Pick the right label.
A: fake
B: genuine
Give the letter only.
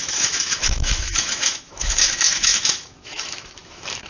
A